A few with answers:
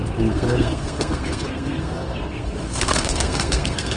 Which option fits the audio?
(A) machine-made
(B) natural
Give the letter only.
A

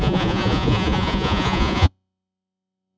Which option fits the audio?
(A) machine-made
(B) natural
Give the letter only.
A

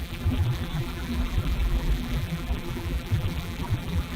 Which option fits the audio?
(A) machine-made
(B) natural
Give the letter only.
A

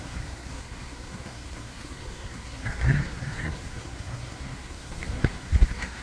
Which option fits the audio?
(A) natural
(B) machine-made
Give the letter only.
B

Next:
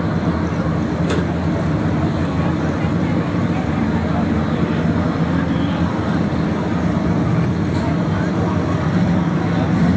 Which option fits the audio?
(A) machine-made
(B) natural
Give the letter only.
B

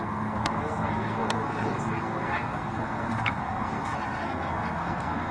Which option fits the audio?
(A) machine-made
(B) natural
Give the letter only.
A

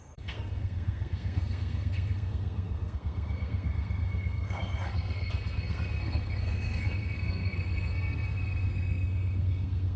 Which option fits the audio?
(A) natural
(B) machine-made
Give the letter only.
B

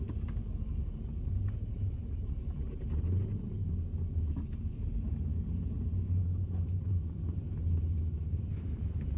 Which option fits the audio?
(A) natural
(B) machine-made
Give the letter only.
B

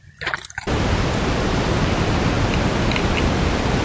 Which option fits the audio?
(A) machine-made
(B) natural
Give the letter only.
B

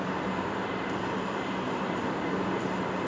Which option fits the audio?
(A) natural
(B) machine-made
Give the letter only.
A